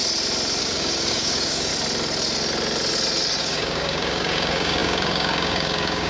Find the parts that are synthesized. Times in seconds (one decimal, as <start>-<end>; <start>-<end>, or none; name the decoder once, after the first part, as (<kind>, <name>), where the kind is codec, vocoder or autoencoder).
0.6-1.7 (codec, DAC); 3.4-6.1